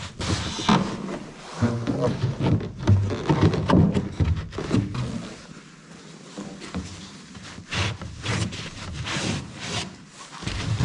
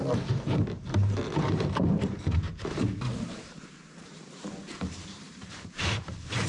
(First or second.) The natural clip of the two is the first